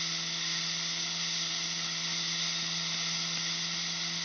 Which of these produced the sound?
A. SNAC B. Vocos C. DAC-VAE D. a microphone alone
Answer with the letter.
D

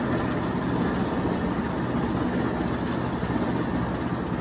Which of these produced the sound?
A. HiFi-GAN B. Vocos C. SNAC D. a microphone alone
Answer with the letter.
D